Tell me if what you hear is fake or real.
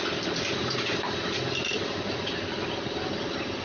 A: real